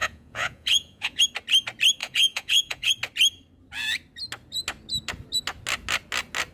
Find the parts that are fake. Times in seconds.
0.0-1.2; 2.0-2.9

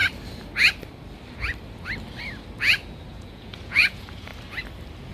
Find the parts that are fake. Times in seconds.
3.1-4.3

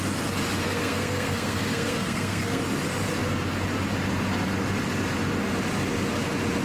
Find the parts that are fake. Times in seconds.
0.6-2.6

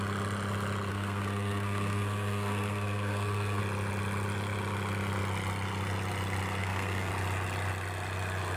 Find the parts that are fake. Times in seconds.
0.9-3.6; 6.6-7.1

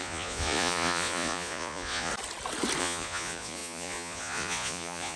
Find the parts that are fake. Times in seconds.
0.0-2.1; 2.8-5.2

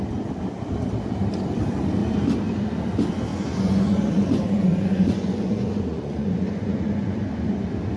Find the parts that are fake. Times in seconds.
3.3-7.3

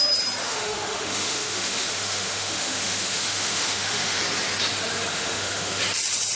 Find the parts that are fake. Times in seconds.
0.4-4.2; 5.1-5.8

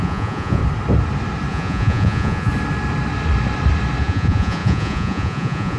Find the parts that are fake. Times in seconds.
0.0-0.6; 1.5-2.5; 4.0-5.8